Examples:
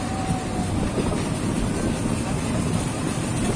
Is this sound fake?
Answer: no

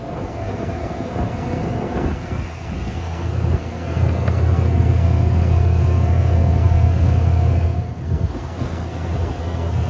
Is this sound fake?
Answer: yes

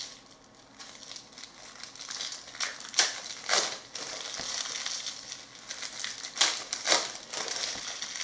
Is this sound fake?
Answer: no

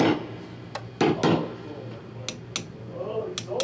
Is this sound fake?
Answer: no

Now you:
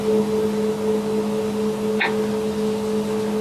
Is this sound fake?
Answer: no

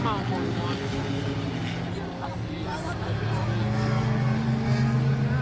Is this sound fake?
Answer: no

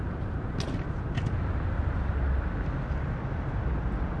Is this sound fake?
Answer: no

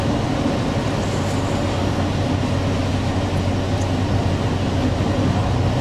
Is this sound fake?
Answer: no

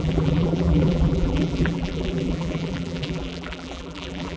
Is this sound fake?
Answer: yes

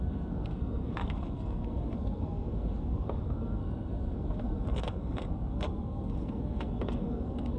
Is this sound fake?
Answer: yes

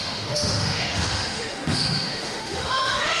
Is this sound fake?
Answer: yes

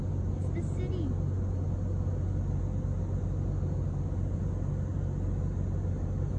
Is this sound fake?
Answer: no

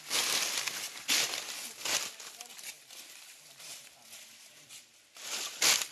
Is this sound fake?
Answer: no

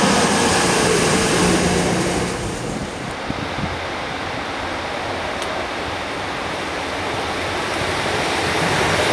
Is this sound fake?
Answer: no